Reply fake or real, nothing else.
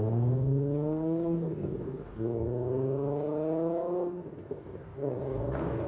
fake